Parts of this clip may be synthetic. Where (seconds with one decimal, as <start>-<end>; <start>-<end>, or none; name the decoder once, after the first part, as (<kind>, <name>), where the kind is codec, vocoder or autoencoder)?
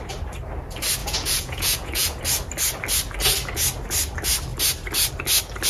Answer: 1.0-2.2 (vocoder, Vocos)